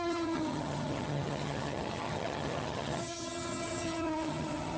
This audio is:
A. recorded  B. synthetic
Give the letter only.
B